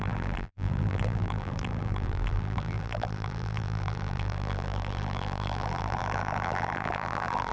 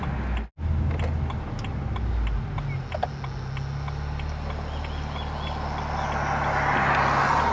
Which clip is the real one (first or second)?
second